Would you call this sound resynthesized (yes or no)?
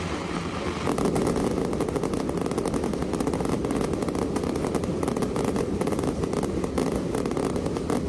no